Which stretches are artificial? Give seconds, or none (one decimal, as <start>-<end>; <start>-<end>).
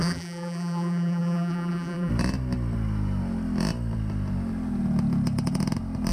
0.0-2.1